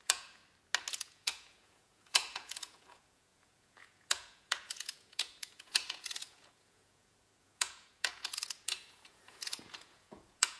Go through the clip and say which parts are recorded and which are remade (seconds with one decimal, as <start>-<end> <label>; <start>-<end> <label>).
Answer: 0.0-0.4 remade; 0.4-0.9 recorded; 0.9-10.6 remade